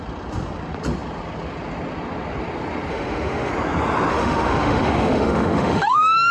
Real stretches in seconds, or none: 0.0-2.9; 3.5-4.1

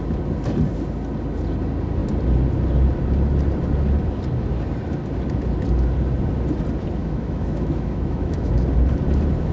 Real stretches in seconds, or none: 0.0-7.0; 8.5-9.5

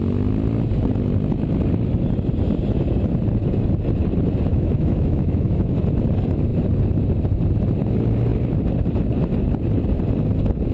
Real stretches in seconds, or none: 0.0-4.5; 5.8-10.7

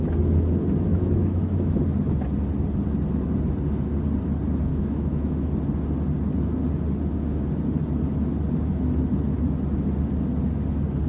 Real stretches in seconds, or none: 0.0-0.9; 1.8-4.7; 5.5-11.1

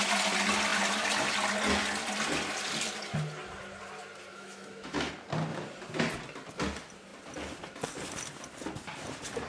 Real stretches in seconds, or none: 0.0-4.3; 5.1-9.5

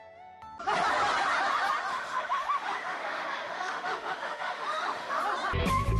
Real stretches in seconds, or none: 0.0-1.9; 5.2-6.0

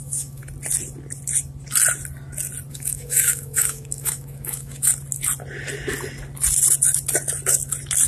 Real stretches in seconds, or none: 0.4-2.7; 4.9-8.1